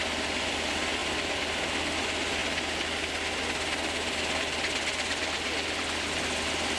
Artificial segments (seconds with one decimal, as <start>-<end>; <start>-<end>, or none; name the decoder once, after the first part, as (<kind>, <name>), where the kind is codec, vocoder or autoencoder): none